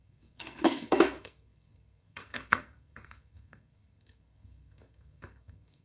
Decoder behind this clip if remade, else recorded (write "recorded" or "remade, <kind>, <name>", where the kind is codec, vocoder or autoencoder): remade, codec, SNAC